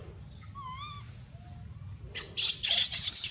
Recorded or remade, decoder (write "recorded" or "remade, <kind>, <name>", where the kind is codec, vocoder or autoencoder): recorded